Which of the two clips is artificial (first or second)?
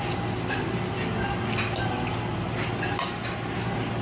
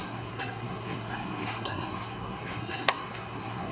second